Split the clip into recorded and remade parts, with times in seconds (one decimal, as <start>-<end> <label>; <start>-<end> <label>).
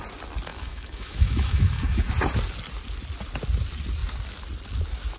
0.0-0.5 recorded; 0.5-2.1 remade; 2.1-5.2 recorded